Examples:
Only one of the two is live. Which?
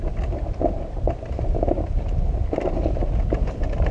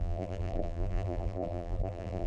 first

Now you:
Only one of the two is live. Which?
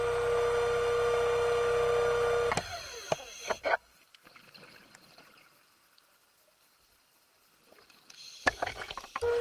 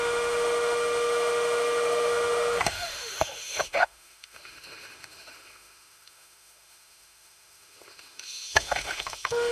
first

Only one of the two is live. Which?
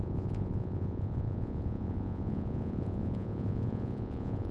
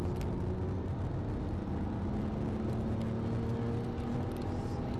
second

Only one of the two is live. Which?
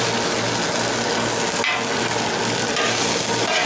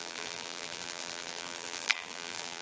first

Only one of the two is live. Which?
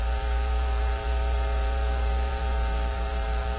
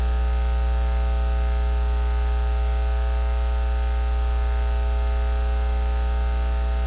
second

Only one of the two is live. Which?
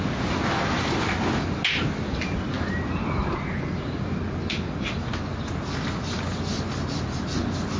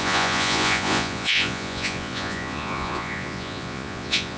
first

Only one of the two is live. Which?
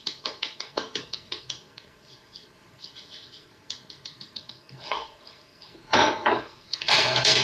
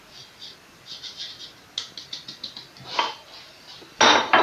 second